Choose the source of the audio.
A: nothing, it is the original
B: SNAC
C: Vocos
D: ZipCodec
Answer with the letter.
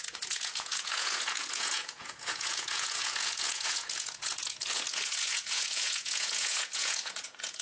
C